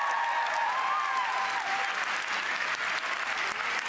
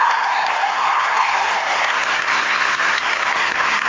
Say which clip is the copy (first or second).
second